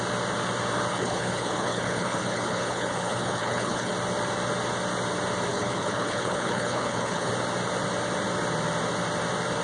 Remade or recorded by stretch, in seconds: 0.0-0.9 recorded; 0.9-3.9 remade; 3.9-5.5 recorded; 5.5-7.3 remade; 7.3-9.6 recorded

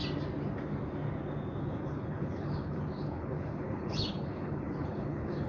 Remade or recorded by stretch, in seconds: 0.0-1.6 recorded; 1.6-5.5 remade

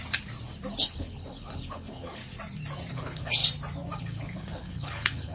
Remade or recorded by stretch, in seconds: 0.0-0.8 recorded; 0.8-2.2 remade; 2.2-2.9 recorded; 2.9-3.4 remade; 3.4-4.0 recorded; 4.0-5.3 remade

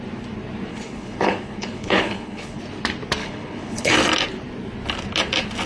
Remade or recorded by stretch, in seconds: 0.0-0.7 recorded; 0.7-2.6 remade; 2.6-3.2 recorded; 3.2-3.9 remade; 3.9-5.7 recorded

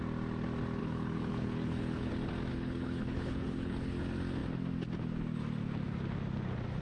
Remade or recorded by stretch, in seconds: 0.0-0.8 recorded; 0.8-2.1 remade; 2.1-2.5 recorded; 2.5-4.0 remade; 4.0-6.8 recorded